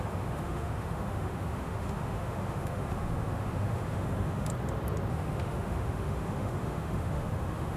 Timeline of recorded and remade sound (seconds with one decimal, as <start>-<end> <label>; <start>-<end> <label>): 0.0-4.5 remade; 4.5-5.1 recorded; 5.1-7.8 remade